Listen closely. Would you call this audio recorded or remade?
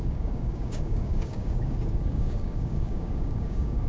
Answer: remade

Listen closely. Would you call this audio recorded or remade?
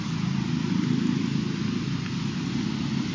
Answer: recorded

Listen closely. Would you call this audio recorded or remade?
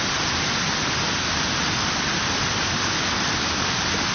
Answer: recorded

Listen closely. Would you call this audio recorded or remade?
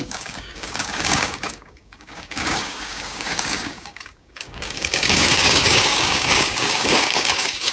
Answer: remade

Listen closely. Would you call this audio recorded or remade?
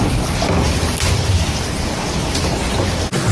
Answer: recorded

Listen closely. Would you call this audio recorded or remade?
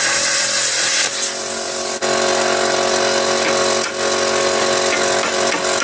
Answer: recorded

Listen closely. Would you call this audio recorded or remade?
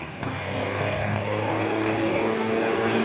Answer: remade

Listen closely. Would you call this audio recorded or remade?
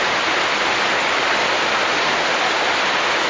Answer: recorded